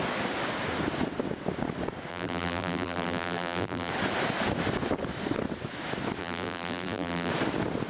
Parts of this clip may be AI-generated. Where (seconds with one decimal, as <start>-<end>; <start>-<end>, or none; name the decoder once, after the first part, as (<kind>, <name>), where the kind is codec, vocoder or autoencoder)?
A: 2.1-3.9 (vocoder, BigVGAN v2); 6.2-7.3

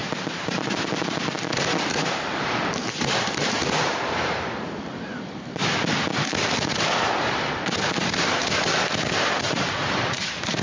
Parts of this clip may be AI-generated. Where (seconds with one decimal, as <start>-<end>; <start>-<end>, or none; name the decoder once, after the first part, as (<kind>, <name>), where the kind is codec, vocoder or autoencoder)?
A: 0.0-5.6 (vocoder, BigVGAN v2); 7.8-10.6

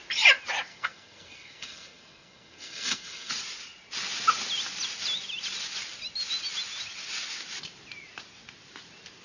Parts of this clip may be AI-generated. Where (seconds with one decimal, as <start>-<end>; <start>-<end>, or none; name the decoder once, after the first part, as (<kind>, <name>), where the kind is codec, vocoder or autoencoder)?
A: 0.7-3.3 (codec, SNAC)

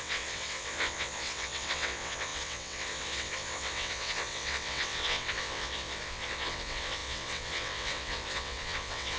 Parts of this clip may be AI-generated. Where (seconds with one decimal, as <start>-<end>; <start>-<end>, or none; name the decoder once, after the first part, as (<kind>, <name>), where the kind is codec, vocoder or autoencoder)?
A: 0.0-9.2 (vocoder, WaveNeXt)